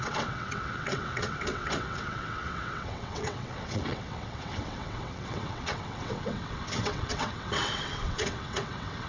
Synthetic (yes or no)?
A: yes